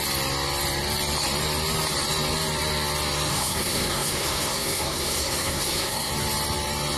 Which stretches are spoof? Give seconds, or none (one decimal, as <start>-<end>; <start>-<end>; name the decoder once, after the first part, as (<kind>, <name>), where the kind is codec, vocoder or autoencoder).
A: 3.3-6.1 (codec, SNAC)